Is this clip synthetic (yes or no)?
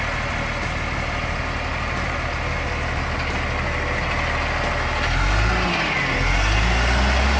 no